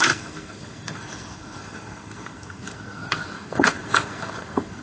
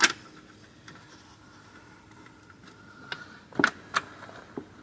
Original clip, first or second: second